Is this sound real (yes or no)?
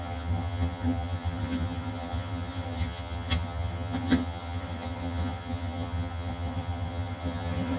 no